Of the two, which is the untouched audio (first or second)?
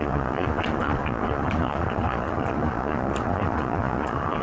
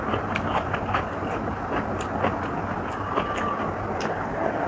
second